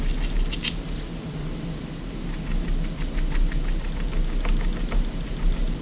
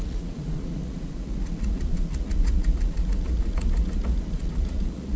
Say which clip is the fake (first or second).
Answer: second